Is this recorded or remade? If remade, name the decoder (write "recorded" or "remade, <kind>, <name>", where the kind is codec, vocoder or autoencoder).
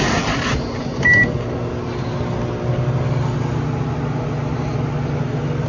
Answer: recorded